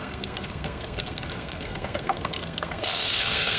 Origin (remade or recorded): remade